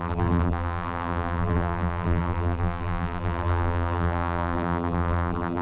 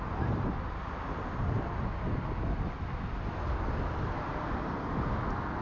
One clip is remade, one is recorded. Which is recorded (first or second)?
second